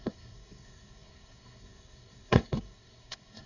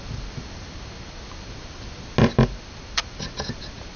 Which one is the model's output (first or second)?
first